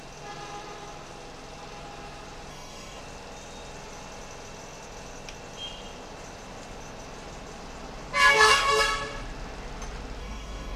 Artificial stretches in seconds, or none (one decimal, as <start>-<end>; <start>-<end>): 2.5-3.0; 8.3-8.8; 10.2-10.8